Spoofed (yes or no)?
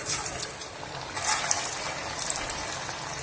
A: no